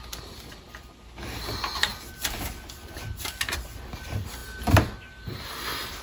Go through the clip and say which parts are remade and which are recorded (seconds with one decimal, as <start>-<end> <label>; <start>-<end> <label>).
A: 0.0-4.4 recorded; 4.4-6.0 remade